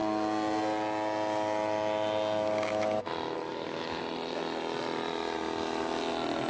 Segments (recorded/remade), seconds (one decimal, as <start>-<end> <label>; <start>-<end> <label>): 0.0-3.5 recorded; 3.5-4.0 remade; 4.0-6.5 recorded